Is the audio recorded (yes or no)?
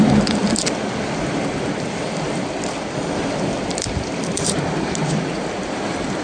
no